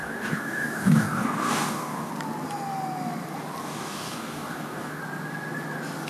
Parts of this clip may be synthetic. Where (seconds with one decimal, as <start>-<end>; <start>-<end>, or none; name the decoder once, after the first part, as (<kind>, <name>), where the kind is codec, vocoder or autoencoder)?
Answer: 0.0-2.1 (codec, DAC); 3.6-5.0